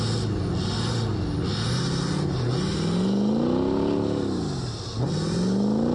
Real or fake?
real